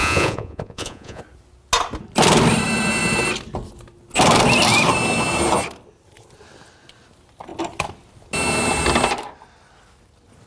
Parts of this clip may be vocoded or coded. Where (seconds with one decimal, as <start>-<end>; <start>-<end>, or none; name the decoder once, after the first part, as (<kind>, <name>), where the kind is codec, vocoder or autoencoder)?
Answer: 0.0-1.2 (vocoder, Vocos)

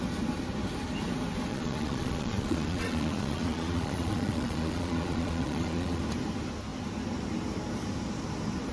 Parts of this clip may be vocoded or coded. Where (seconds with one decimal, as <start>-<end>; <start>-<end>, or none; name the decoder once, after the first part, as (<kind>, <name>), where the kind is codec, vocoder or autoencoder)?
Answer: 1.5-6.0 (vocoder, Vocos)